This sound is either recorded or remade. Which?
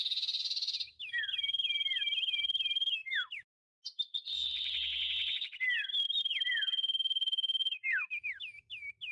recorded